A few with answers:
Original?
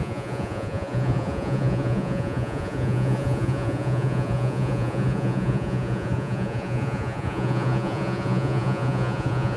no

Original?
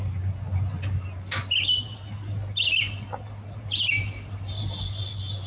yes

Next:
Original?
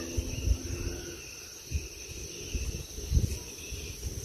yes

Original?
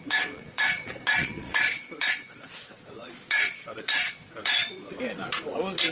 no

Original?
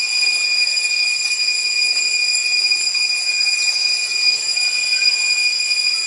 no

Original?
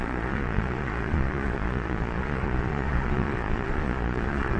no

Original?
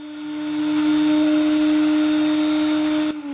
yes